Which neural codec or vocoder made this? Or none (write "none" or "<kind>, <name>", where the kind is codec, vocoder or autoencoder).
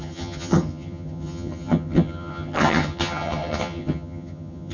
vocoder, HiFi-GAN